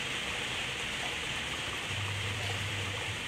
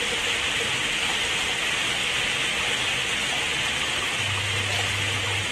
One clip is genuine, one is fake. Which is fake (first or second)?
first